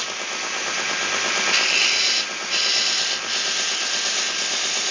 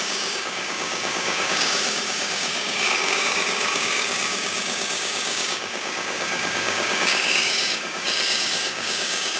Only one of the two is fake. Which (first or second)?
second